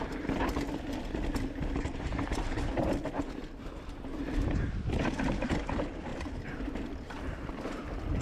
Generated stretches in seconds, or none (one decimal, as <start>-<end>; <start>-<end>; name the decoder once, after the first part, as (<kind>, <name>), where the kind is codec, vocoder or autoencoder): 2.1-2.9 (vocoder, BigVGAN v2); 4.1-4.9; 6.1-7.5

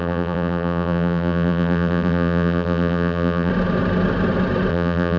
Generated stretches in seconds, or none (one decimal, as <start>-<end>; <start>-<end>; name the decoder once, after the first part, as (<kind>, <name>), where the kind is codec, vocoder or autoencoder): 0.0-3.5 (vocoder, BigVGAN v2); 4.7-5.2

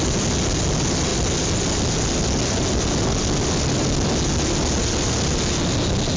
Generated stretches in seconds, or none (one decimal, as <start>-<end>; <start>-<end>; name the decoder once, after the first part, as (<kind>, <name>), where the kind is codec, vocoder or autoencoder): none

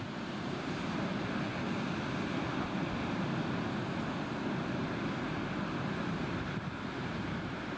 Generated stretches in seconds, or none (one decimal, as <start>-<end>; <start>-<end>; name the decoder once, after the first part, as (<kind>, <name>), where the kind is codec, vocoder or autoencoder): 0.0-1.5 (vocoder, BigVGAN v2); 6.1-7.8

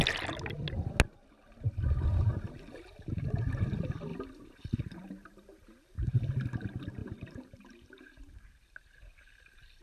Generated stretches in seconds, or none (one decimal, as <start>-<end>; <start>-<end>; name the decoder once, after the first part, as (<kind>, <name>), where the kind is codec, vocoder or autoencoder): 4.1-6.0 (vocoder, BigVGAN v2); 7.0-8.2

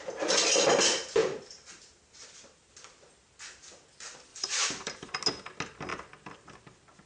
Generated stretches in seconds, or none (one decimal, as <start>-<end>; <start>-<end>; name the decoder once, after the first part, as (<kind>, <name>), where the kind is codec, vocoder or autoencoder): 1.2-2.7 (vocoder, BigVGAN v2); 4.3-5.2